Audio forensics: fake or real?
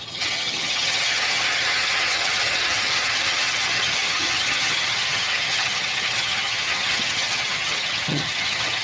fake